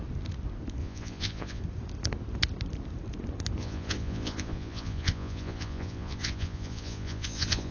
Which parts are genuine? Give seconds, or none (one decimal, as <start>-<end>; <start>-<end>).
0.0-0.8; 1.6-3.6

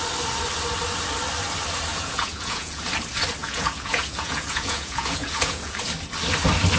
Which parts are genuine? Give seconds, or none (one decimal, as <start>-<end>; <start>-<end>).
0.0-1.9; 2.8-3.4; 5.8-6.8

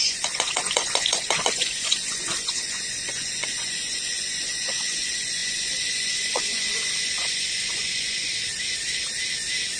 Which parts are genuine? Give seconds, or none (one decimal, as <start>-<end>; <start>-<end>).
8.3-9.8

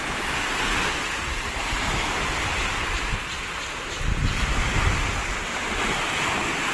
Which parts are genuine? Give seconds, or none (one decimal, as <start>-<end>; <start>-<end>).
0.0-6.7

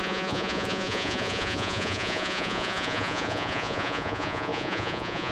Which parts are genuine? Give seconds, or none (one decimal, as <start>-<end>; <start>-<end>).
none

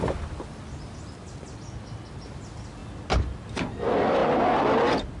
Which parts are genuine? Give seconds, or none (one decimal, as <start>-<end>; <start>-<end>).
0.0-5.2

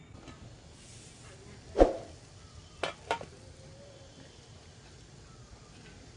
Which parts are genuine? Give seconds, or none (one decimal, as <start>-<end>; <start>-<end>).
0.0-6.2

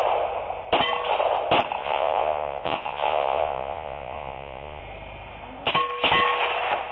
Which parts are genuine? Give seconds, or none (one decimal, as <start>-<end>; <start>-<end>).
0.0-1.8; 4.8-6.9